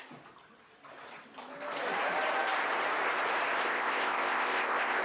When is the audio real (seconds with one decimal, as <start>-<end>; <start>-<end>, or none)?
0.0-3.6